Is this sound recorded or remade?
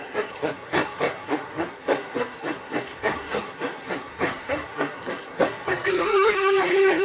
remade